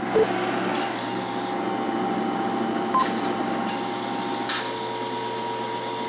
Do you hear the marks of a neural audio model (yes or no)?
no